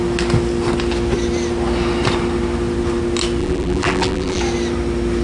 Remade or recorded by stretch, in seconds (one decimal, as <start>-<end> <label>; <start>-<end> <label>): 0.0-3.4 recorded; 3.4-4.4 remade; 4.4-5.2 recorded